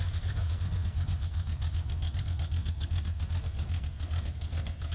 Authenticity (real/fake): fake